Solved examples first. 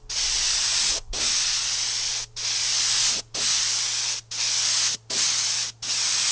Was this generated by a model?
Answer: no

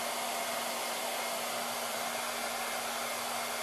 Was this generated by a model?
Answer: no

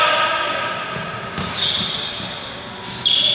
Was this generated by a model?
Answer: no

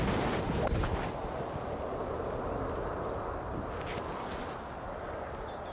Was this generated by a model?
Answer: no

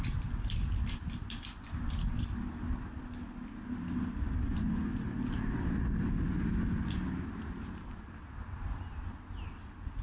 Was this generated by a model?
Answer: no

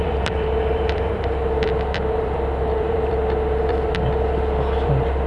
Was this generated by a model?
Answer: yes